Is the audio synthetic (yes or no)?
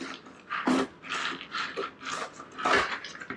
no